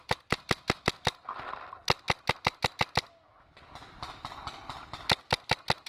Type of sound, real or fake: real